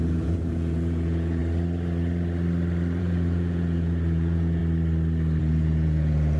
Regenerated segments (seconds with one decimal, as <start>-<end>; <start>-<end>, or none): 0.0-1.4; 3.0-4.6; 5.4-6.4